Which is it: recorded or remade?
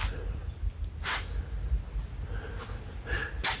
recorded